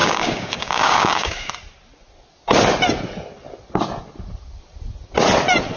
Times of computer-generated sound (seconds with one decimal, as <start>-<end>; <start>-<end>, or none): 0.0-1.5